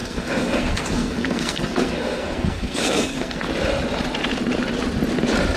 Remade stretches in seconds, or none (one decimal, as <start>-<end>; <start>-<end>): 0.0-3.4